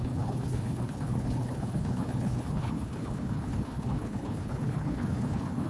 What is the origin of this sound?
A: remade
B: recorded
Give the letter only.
A